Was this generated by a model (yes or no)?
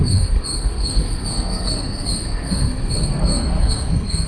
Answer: yes